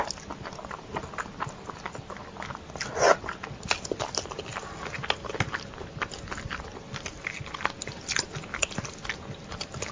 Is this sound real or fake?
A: real